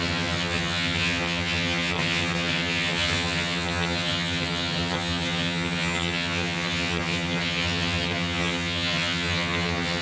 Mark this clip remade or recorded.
remade